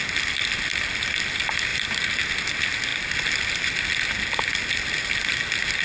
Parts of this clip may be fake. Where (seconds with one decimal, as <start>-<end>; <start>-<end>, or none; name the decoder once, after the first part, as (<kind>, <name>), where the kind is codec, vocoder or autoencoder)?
1.7-2.3 (vocoder, BigVGAN v2)